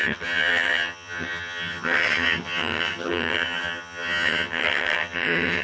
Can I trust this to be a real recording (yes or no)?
no